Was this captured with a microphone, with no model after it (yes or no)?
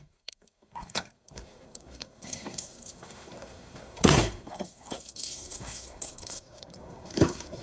no